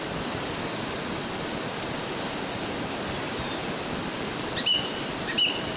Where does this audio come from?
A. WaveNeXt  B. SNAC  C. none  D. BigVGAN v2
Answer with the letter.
C